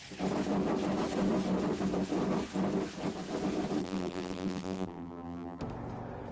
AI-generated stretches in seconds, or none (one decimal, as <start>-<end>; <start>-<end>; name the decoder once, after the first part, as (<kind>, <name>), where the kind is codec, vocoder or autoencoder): 3.8-5.6 (vocoder, BigVGAN v2)